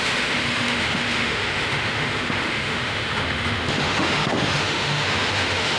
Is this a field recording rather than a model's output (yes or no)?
no